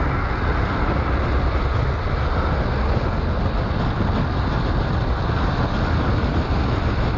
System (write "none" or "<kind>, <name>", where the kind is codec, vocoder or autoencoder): none